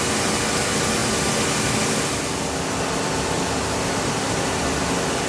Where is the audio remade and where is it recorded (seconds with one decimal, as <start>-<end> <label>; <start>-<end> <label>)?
0.0-5.3 recorded